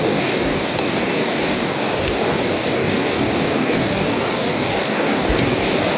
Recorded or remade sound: remade